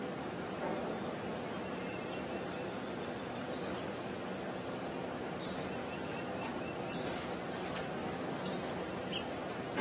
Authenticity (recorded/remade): recorded